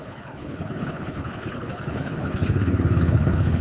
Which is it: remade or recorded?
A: remade